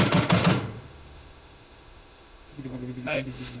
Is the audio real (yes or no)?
no